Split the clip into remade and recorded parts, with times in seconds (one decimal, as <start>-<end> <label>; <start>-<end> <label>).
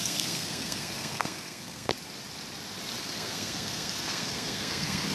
0.0-1.9 remade; 1.9-3.0 recorded; 3.0-5.1 remade